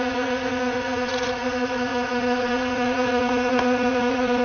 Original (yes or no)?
no